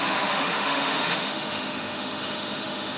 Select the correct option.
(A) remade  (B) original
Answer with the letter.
A